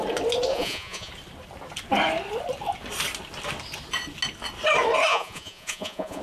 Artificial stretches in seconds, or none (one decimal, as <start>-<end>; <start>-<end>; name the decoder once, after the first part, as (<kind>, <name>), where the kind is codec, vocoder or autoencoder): 0.5-1.1 (vocoder, Vocos); 5.1-6.2